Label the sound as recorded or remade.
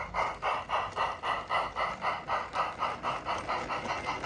recorded